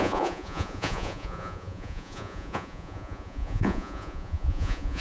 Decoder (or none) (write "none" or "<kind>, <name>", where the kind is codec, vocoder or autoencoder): vocoder, Vocos